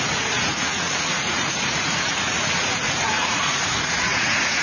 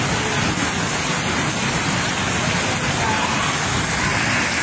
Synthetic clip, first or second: first